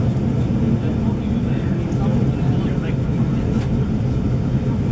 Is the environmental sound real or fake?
real